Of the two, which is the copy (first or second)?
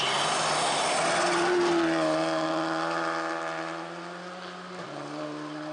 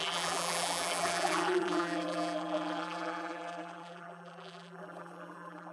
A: second